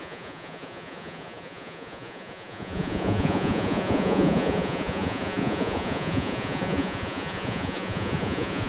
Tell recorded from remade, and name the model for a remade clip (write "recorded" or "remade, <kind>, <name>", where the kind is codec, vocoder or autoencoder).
remade, vocoder, Vocos